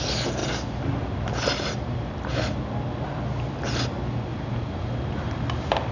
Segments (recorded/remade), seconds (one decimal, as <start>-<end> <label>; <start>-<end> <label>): 0.0-4.3 recorded; 4.3-5.4 remade; 5.4-5.9 recorded